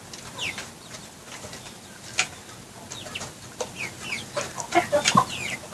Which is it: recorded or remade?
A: recorded